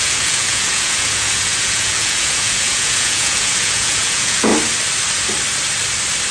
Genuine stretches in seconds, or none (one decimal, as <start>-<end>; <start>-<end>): 4.5-6.3